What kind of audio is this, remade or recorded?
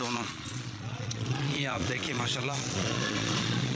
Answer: remade